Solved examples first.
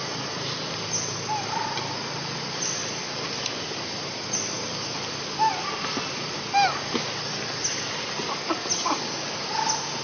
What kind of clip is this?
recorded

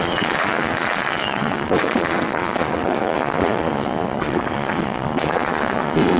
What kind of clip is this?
remade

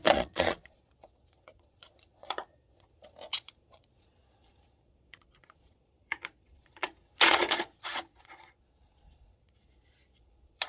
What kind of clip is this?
remade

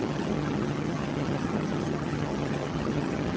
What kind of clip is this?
remade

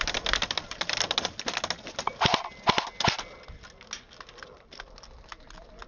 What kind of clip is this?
recorded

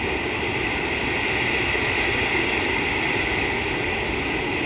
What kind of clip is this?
recorded